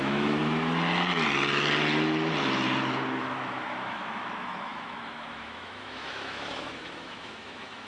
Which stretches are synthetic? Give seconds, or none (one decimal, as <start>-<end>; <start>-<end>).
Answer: 0.0-0.4; 3.2-7.9